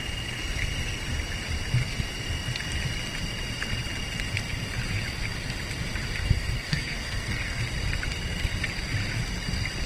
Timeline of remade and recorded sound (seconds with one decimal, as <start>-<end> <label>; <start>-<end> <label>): 0.0-6.2 recorded; 6.2-7.6 remade; 7.6-9.9 recorded